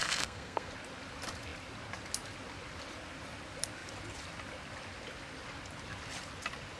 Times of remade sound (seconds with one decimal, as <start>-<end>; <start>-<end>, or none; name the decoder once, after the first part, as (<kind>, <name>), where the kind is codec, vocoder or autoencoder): 0.0-0.7 (codec, SNAC)